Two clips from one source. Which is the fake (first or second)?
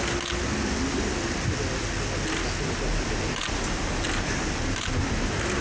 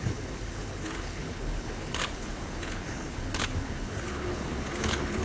second